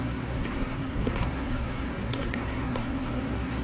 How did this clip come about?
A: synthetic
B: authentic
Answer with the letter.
A